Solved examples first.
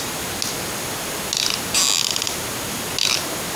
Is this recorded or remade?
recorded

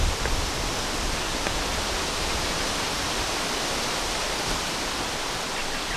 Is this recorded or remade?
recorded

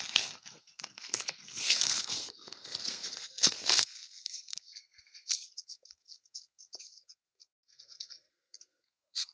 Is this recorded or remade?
remade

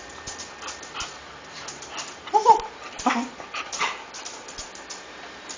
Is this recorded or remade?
remade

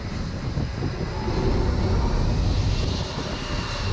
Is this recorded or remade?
recorded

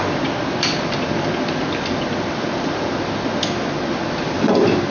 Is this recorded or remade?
remade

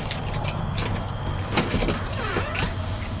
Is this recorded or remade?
recorded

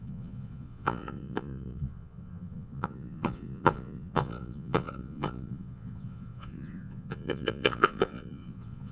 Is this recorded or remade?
remade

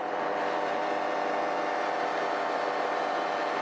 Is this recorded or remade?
remade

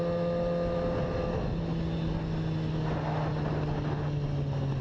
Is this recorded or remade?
recorded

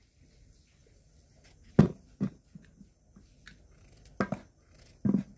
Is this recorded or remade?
recorded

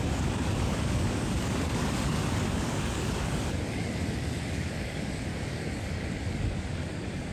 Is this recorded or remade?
remade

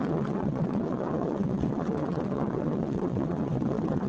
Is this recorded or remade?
remade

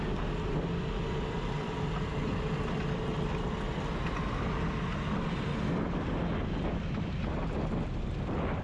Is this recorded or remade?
recorded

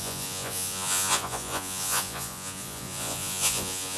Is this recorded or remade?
remade